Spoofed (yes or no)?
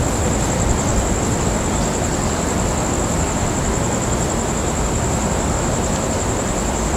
no